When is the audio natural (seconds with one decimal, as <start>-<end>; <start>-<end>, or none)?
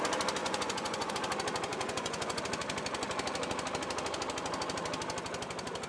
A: 0.0-0.4; 1.1-1.7; 2.4-5.9